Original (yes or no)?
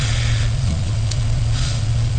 no